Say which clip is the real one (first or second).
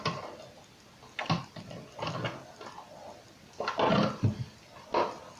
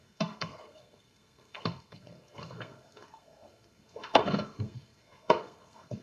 first